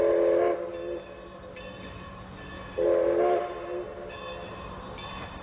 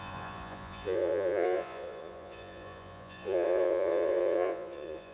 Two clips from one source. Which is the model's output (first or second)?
second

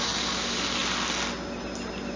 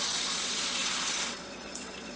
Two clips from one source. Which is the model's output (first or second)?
second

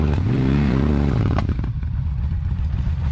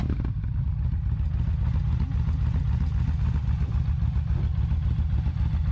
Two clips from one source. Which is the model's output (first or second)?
first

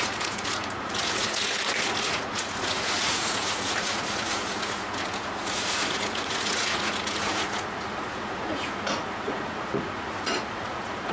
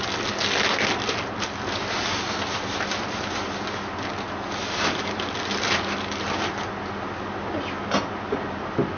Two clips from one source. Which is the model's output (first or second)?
first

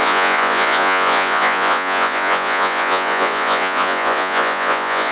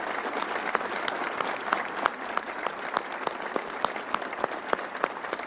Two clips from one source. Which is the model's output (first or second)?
first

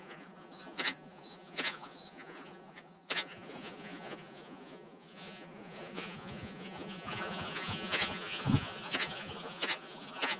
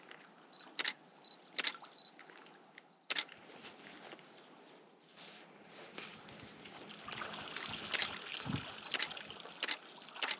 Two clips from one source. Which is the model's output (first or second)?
first